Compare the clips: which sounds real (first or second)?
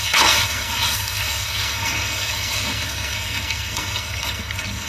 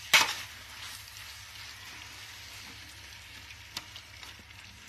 second